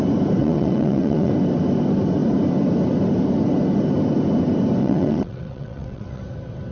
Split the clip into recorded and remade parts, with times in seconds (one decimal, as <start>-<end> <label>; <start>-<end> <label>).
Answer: 0.0-0.4 recorded; 0.4-1.3 remade; 1.3-4.8 recorded; 4.8-6.2 remade; 6.2-6.7 recorded